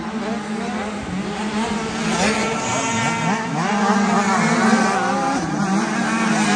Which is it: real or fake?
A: real